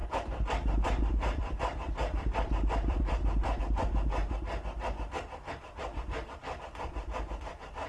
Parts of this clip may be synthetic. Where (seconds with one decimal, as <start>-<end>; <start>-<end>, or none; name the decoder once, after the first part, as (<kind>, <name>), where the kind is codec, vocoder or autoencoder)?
0.0-4.2 (vocoder, BigVGAN v2); 5.5-7.9